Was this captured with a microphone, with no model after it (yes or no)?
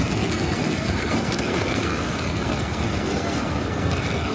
no